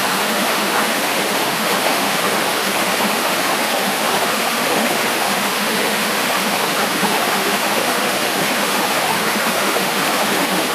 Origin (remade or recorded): remade